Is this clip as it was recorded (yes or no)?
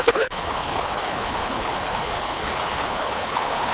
no